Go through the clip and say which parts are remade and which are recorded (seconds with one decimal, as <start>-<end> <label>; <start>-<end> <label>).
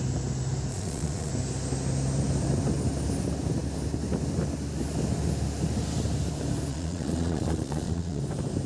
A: 0.0-0.7 recorded; 0.7-1.3 remade; 1.3-6.7 recorded; 6.7-8.2 remade; 8.2-8.7 recorded